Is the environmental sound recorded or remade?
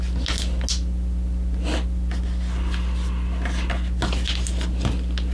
recorded